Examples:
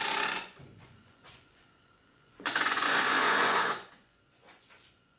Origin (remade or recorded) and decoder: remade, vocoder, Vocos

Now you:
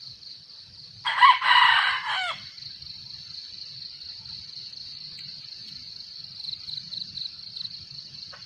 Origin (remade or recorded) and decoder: recorded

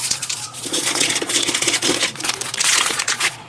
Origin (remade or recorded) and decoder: remade, vocoder, Vocos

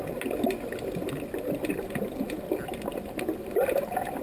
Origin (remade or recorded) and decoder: recorded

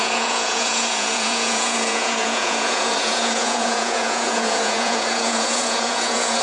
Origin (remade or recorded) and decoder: remade, vocoder, Vocos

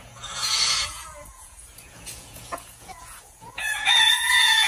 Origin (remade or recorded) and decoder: remade, vocoder, Vocos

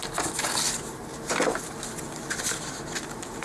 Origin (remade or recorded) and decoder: recorded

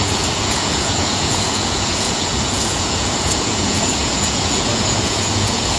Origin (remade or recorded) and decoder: remade, vocoder, Vocos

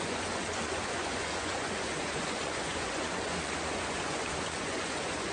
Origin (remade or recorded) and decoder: remade, vocoder, Vocos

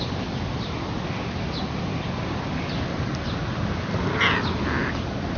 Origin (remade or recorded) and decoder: recorded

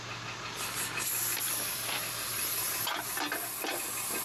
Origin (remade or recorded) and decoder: recorded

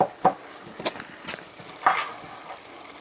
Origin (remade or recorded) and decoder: recorded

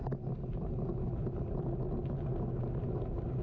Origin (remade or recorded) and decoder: recorded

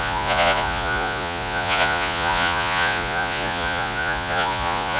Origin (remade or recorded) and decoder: remade, vocoder, Vocos